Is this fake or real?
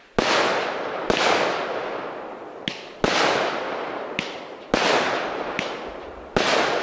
real